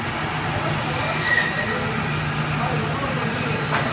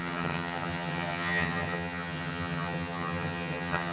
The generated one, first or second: second